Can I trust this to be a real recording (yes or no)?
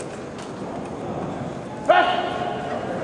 yes